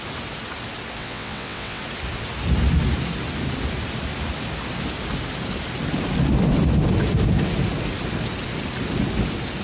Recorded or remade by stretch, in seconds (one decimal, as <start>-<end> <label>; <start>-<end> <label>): 0.0-1.0 recorded; 1.0-1.8 remade; 1.8-9.6 recorded